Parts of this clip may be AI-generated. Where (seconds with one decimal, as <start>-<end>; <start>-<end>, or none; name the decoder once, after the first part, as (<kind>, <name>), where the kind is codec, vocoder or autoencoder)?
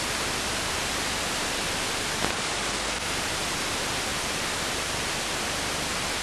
none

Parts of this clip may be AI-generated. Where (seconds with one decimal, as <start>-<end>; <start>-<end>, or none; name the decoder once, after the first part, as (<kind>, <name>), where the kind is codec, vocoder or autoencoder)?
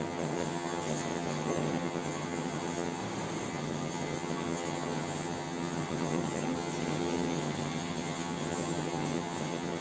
0.0-3.0 (vocoder, HiFi-GAN); 3.5-9.8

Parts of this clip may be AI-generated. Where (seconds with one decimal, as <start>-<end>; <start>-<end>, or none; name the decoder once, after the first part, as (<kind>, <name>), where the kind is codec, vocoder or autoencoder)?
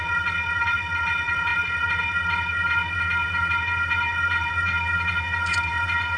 0.0-6.2 (vocoder, Vocos)